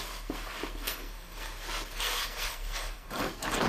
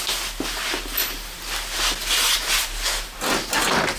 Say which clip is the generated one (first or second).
first